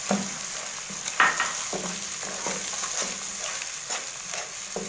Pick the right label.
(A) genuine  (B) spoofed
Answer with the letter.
A